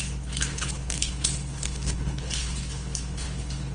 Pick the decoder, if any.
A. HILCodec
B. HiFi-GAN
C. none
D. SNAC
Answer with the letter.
A